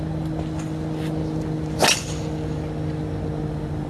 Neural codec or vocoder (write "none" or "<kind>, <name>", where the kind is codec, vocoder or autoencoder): none